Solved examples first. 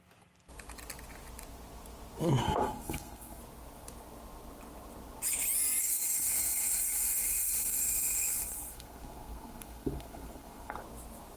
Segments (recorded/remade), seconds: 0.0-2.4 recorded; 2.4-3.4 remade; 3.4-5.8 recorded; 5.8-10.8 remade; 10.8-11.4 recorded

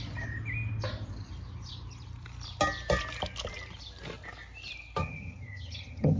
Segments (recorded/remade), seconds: 0.0-5.0 recorded; 5.0-6.2 remade

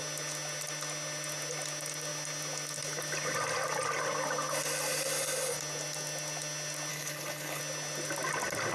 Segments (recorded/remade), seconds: 0.0-6.9 recorded; 6.9-7.6 remade; 7.6-8.7 recorded

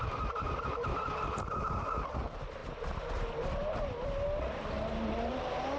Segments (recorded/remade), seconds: 0.0-5.8 recorded

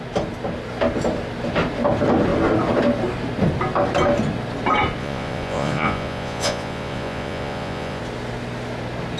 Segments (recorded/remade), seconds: 0.0-5.0 recorded; 5.0-8.0 remade; 8.0-9.2 recorded

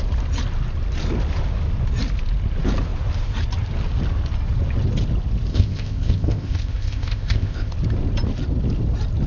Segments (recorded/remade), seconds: 0.0-5.5 recorded; 5.5-7.7 remade; 7.7-9.3 recorded